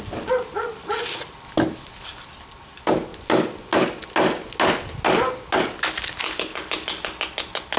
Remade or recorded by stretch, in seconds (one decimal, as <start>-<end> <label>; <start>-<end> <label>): 0.0-7.8 recorded